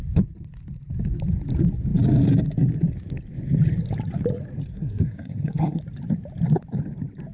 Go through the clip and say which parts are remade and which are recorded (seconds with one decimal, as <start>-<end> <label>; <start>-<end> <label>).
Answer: 0.0-4.7 recorded; 4.7-5.8 remade; 5.8-7.3 recorded